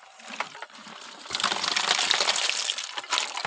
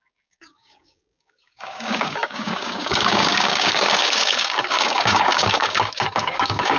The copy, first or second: second